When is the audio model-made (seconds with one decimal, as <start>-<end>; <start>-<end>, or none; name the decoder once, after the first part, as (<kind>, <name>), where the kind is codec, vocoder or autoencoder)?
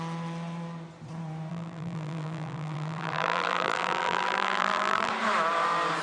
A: 1.5-5.1 (vocoder, BigVGAN v2)